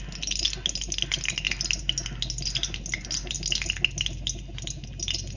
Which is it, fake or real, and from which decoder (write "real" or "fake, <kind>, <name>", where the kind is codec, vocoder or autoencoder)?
real